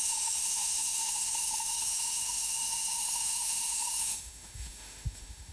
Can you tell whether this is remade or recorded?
remade